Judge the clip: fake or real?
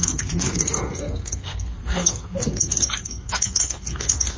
fake